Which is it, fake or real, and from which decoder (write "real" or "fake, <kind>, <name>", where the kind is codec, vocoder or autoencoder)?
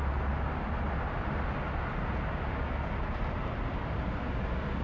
real